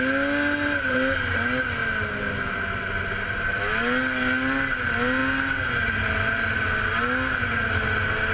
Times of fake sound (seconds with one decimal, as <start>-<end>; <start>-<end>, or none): none